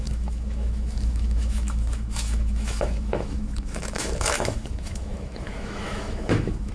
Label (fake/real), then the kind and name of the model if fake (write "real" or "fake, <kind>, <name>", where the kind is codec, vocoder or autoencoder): fake, autoencoder, DAC-VAE